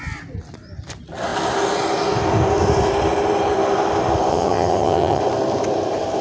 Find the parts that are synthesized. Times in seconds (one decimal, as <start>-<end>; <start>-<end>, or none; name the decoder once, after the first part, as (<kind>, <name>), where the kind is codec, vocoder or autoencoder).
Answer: 4.3-5.2 (vocoder, HiFi-GAN)